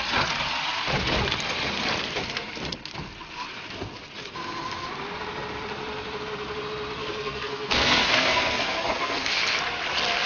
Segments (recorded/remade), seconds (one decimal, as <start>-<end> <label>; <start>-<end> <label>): 0.0-7.0 recorded; 7.0-9.4 remade; 9.4-10.3 recorded